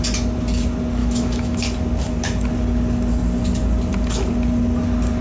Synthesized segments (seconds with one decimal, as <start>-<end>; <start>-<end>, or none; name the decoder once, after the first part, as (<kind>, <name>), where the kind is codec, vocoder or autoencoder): 1.0-1.6 (autoencoder, DAC-VAE)